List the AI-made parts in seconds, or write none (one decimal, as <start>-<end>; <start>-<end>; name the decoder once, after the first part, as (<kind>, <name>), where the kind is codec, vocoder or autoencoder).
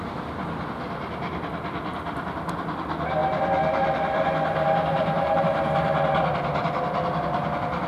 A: none